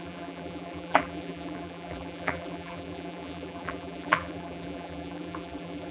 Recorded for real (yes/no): no